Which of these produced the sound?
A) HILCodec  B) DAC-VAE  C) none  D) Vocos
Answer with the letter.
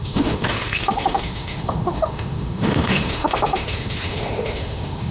B